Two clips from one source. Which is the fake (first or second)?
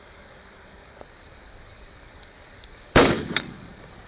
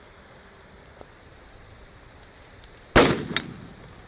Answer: first